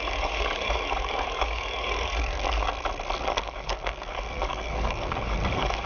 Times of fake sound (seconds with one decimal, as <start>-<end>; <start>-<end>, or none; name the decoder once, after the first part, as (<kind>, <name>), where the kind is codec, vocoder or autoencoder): 0.0-2.7 (codec, DAC); 3.2-5.9